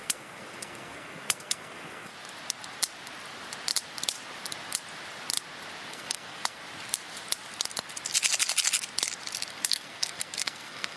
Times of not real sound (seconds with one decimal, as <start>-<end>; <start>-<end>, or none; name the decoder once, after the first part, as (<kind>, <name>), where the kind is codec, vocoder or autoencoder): 0.0-2.1 (codec, SNAC); 5.9-6.6; 9.5-11.0